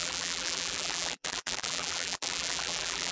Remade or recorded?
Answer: remade